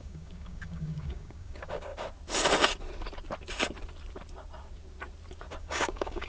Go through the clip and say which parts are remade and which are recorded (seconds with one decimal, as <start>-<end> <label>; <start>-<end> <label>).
0.0-1.9 remade; 1.9-5.6 recorded; 5.6-6.3 remade